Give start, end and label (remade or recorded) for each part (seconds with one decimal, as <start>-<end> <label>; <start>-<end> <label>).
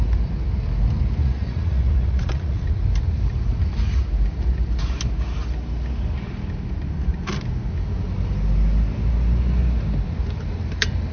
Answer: 0.0-1.2 recorded; 1.2-2.7 remade; 2.7-11.1 recorded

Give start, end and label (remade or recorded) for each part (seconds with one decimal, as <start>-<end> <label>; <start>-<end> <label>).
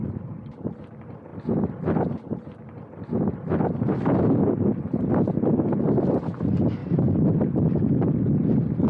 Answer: 0.0-0.8 remade; 0.8-6.8 recorded; 6.8-7.8 remade; 7.8-8.9 recorded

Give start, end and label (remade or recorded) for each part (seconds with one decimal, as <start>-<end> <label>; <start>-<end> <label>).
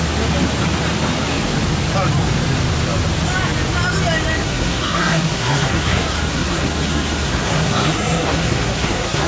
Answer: 0.0-4.4 recorded; 4.4-9.3 remade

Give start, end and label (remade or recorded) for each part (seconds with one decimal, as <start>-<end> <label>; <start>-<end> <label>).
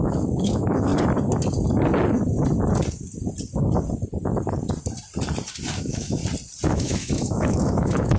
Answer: 0.0-0.9 remade; 0.9-5.8 recorded; 5.8-6.2 remade; 6.2-6.7 recorded; 6.7-8.2 remade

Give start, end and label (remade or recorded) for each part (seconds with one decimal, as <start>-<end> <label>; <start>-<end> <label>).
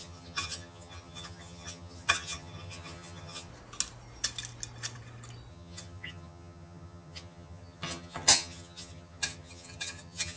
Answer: 0.0-3.5 remade; 3.5-5.5 recorded; 5.5-10.4 remade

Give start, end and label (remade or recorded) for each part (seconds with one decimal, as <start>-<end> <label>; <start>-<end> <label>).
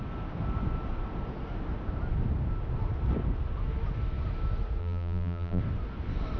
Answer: 0.0-4.8 recorded; 4.8-5.6 remade; 5.6-6.4 recorded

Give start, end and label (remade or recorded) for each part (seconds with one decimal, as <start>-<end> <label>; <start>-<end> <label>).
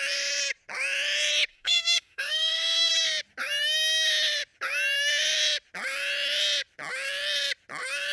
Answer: 0.0-1.5 recorded; 1.5-2.9 remade; 2.9-8.1 recorded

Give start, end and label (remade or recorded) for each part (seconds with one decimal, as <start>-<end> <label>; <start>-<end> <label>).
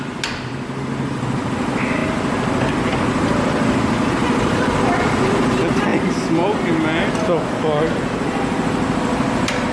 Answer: 0.0-9.7 recorded